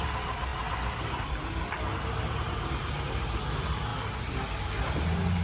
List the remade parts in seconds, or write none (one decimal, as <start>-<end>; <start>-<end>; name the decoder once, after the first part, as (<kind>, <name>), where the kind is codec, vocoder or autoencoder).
0.0-0.5 (vocoder, BigVGAN v2); 2.1-3.9; 4.9-5.4